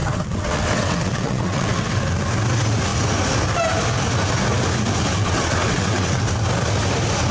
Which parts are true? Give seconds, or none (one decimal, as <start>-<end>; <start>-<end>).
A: 2.0-5.2; 6.2-7.3